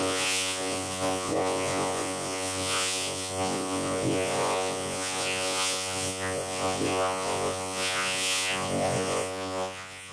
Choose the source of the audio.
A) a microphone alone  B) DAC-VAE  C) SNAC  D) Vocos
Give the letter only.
D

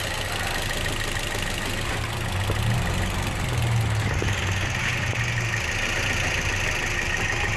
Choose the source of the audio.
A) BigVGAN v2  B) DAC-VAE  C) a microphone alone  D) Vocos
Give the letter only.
C